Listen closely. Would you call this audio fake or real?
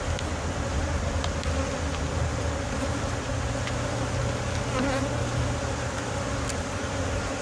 real